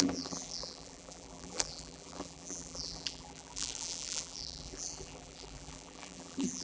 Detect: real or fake fake